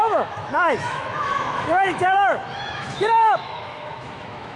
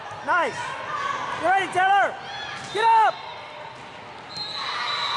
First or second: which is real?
second